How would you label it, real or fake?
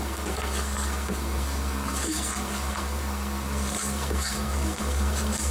fake